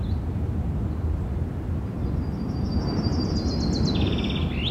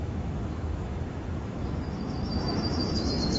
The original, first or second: first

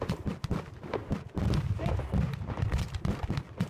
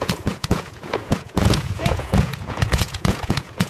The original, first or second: first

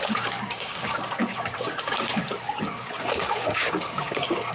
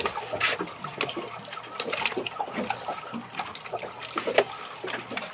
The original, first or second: second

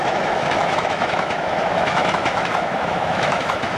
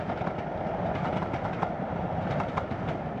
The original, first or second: second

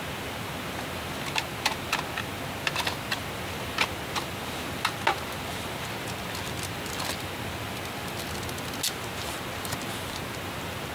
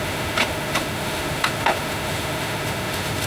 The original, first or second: first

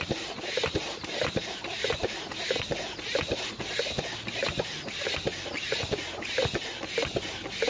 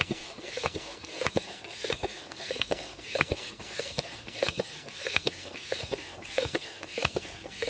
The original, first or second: first